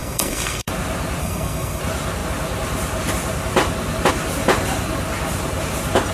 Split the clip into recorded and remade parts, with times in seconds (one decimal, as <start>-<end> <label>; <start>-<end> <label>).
0.0-0.7 remade; 0.7-1.2 recorded; 1.2-1.8 remade; 1.8-6.1 recorded